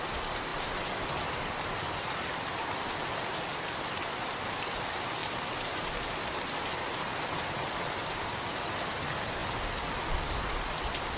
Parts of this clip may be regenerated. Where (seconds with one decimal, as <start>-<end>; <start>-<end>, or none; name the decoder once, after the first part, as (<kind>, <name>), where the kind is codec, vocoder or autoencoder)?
none